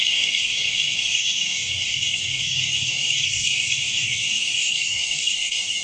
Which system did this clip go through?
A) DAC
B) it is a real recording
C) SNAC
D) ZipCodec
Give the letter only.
A